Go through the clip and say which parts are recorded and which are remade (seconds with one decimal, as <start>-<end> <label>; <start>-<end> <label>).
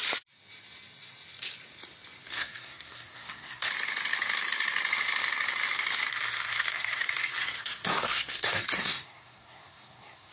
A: 0.0-2.3 recorded; 2.3-3.7 remade; 3.7-6.1 recorded; 6.1-10.3 remade